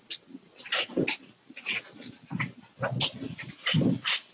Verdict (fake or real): real